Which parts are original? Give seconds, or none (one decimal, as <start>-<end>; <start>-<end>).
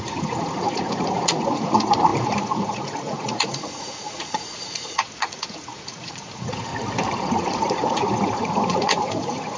6.7-7.2